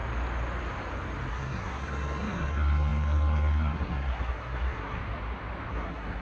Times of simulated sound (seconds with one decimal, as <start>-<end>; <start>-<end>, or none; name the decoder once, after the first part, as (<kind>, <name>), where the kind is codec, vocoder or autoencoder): 1.3-5.0 (codec, SNAC); 5.7-6.2